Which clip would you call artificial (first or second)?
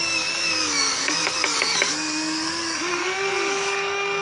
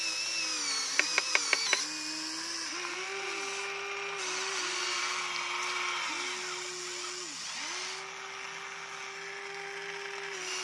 first